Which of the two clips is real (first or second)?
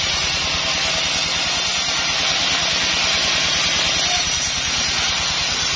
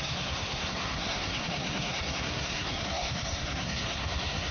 first